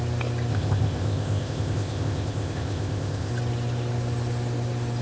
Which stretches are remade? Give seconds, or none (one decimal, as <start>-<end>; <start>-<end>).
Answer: 0.5-3.3